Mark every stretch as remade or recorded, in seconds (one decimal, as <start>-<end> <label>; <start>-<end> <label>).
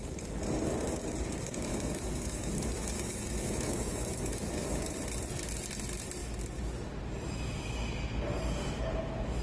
0.0-1.7 recorded; 1.7-4.8 remade; 4.8-9.4 recorded